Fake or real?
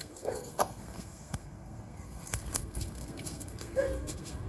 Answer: fake